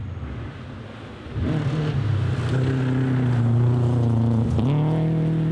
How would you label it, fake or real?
real